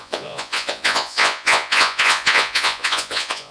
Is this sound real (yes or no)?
no